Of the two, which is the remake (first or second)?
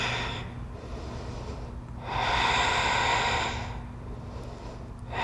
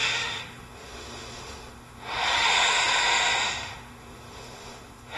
second